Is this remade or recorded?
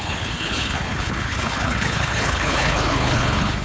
remade